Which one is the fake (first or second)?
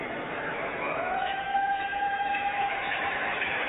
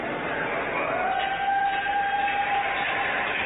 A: first